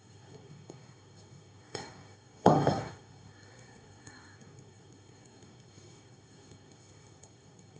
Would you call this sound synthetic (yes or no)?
yes